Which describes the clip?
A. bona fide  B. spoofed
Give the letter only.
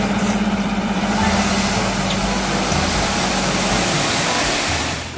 B